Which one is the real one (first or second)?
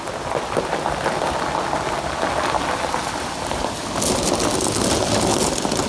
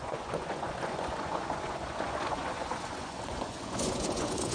first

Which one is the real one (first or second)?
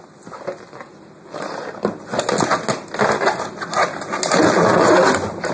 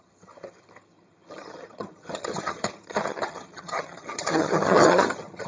first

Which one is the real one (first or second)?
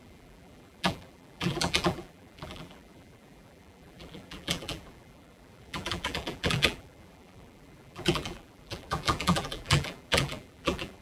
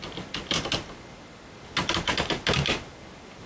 second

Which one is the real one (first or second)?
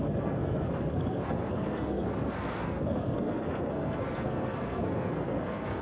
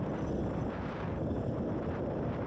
second